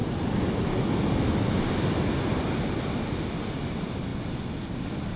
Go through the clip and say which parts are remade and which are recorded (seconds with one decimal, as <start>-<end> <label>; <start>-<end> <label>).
0.0-5.2 recorded